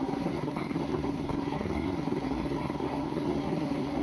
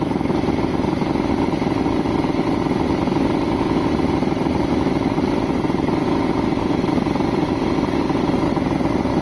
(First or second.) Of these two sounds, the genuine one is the second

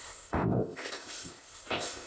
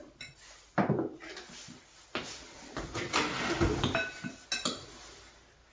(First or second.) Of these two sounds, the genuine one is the second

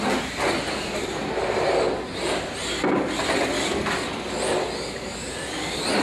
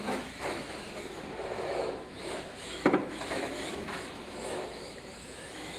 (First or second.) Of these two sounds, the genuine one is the first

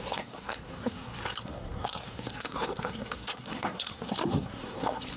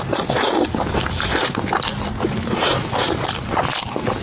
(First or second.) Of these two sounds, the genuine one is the second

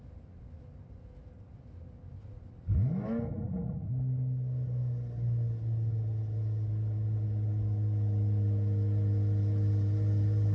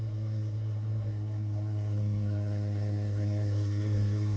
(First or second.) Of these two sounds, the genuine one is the first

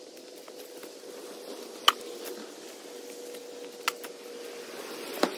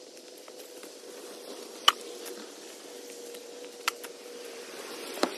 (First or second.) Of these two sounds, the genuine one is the first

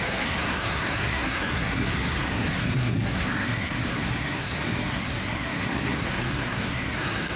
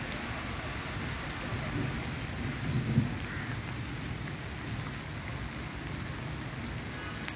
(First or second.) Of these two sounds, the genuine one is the second